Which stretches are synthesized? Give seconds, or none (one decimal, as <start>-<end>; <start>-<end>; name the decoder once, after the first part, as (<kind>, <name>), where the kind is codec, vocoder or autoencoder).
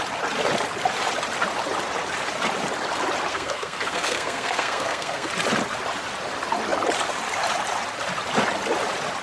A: 3.3-5.3 (codec, SNAC)